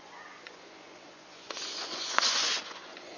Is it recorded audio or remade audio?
remade